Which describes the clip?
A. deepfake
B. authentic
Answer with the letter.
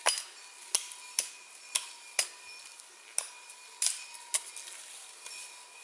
B